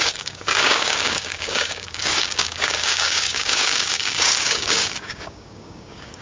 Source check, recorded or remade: remade